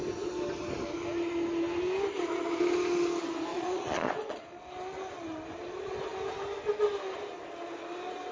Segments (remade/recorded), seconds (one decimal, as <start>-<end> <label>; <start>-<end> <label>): 0.0-3.5 recorded; 3.5-4.4 remade; 4.4-8.3 recorded

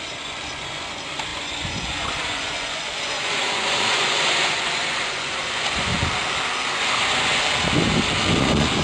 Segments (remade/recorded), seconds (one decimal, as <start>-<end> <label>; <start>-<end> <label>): 0.0-5.9 remade; 5.9-6.7 recorded; 6.7-7.4 remade; 7.4-8.4 recorded; 8.4-8.8 remade

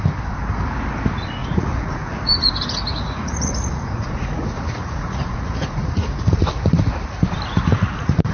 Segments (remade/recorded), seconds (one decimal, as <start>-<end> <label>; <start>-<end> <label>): 0.0-1.4 recorded; 1.4-2.5 remade; 2.5-2.9 recorded; 2.9-6.7 remade; 6.7-7.7 recorded; 7.7-8.3 remade

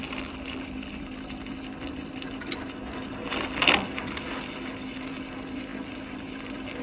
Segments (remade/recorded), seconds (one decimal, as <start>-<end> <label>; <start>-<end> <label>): 0.0-6.8 recorded

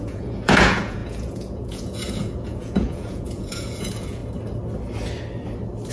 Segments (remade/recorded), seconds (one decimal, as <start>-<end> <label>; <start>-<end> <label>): 0.0-4.2 remade; 4.2-5.9 recorded